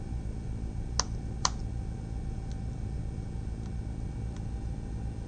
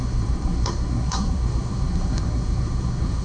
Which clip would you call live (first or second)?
first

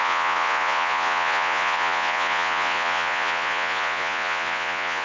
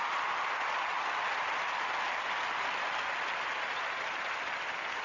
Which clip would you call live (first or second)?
second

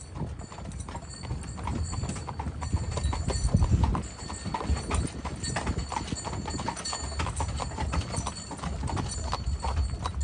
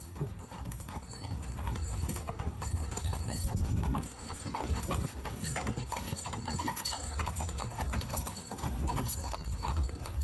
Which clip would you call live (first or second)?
first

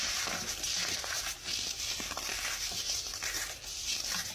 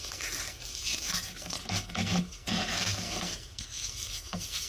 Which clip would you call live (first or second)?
first